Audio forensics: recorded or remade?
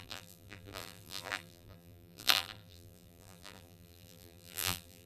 remade